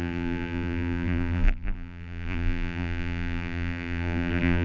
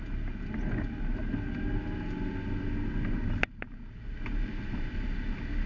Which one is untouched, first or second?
second